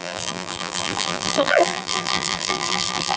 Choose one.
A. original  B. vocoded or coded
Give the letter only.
B